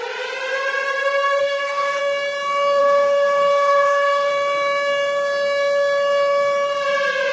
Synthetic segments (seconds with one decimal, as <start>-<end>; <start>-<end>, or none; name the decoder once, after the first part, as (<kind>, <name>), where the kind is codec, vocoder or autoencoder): 1.4-2.0 (codec, DAC); 2.8-4.3